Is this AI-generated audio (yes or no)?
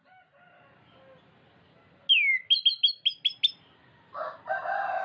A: no